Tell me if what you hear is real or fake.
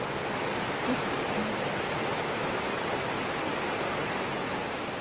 real